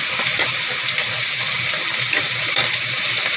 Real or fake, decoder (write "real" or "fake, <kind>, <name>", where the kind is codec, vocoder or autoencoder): fake, vocoder, BigVGAN v2